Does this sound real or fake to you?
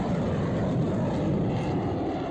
fake